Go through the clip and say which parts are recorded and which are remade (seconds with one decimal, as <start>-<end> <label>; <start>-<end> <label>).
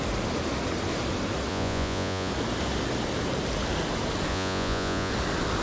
0.0-1.5 recorded; 1.5-2.3 remade; 2.3-4.3 recorded; 4.3-5.1 remade; 5.1-5.6 recorded